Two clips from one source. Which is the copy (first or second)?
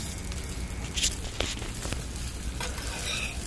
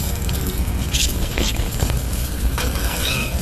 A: second